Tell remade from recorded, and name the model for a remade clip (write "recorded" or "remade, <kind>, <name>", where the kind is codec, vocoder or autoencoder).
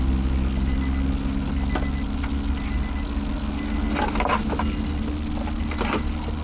recorded